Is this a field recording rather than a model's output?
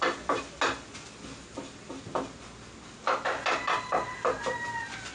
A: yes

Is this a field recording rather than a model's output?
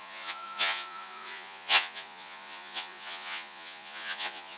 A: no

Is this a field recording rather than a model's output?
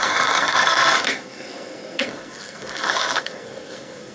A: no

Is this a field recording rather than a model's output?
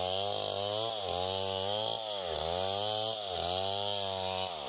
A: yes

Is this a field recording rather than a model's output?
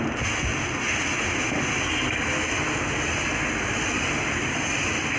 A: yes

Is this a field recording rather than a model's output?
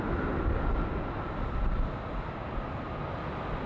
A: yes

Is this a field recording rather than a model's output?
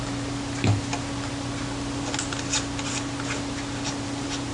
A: yes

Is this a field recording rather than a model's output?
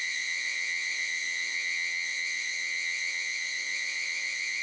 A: no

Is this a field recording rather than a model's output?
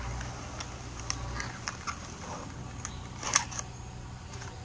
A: yes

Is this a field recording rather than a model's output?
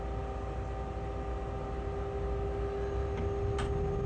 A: yes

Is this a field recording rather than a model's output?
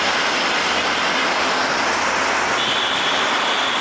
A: yes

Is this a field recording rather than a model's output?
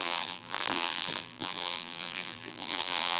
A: no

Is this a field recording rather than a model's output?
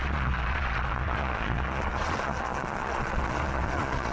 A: no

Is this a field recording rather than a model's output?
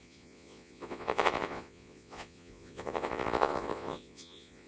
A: no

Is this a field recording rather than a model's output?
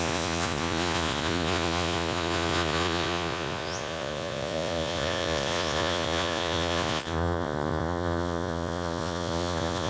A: no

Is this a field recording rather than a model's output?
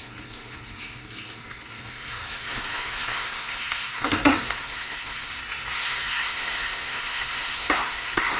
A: no